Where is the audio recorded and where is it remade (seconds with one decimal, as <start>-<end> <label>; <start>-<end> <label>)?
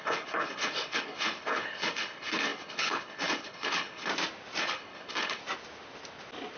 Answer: 0.0-4.1 remade; 4.1-4.6 recorded; 4.6-5.4 remade; 5.4-6.6 recorded